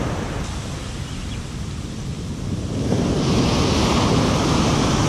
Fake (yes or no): no